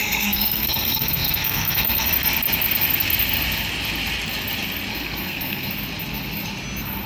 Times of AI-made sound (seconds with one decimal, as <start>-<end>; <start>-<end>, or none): 0.0-2.1; 4.9-5.7